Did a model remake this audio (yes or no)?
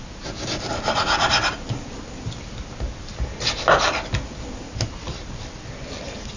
no